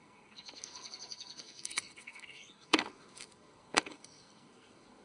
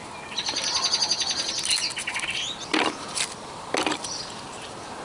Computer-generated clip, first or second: first